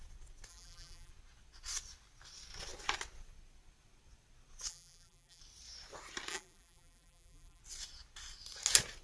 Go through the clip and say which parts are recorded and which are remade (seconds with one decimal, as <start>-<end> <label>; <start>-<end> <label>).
0.0-0.5 recorded; 0.5-1.1 remade; 1.1-4.7 recorded; 4.7-5.4 remade; 5.4-6.3 recorded; 6.3-7.6 remade; 7.6-9.0 recorded